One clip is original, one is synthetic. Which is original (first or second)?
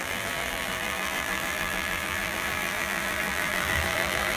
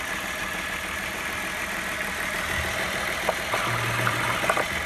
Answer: second